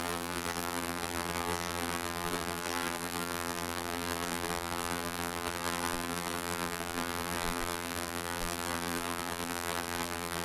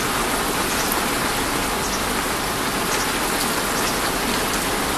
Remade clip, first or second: first